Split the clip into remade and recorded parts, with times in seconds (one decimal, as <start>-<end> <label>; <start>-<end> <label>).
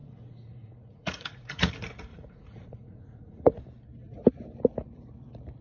0.0-1.7 remade; 1.7-2.1 recorded; 2.1-3.6 remade; 3.6-5.6 recorded